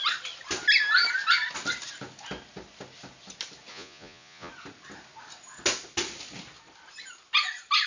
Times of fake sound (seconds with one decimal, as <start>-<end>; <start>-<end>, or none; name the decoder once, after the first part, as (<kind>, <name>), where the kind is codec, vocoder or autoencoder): 3.7-4.5 (vocoder, Vocos)